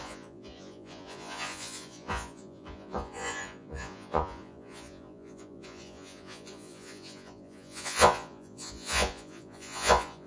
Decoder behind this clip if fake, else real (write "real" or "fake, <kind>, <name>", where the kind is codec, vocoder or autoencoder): fake, vocoder, Vocos